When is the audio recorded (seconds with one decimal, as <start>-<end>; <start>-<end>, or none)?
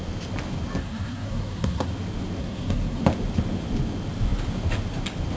0.0-0.8; 1.9-2.4; 3.0-5.4